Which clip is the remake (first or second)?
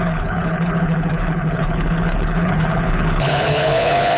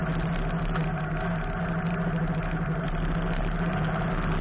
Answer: first